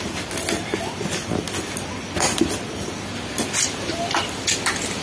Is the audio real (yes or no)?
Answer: yes